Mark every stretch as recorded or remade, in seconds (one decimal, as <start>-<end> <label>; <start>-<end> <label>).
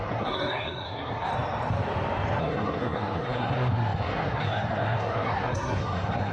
0.0-1.3 remade; 1.3-2.4 recorded; 2.4-6.3 remade